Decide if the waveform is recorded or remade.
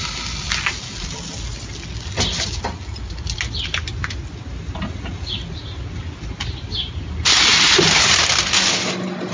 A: recorded